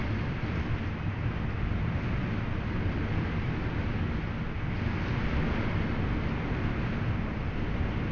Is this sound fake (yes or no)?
no